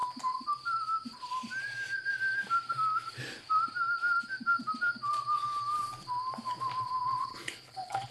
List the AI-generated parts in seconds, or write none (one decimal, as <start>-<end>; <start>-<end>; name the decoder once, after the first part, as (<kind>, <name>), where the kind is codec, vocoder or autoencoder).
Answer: 7.3-8.1 (codec, HILCodec)